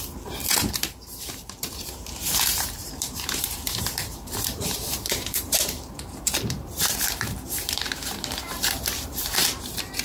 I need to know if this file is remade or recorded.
remade